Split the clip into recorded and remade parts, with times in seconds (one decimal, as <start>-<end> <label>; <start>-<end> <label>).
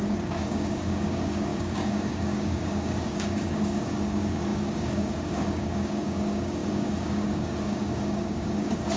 0.0-9.0 remade